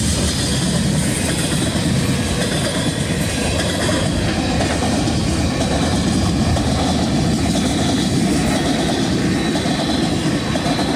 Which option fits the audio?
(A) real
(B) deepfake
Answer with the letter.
A